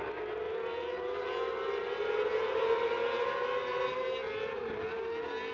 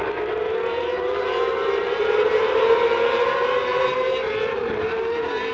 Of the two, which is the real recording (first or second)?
first